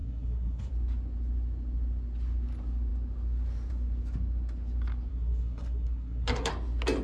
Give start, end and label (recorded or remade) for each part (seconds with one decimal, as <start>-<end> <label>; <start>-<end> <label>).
0.0-0.7 remade; 0.7-5.1 recorded; 5.1-6.5 remade; 6.5-7.0 recorded